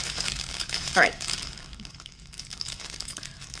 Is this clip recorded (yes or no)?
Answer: no